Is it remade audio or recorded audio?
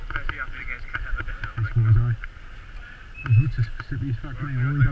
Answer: recorded